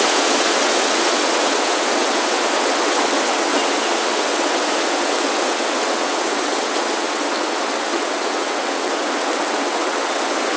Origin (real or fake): fake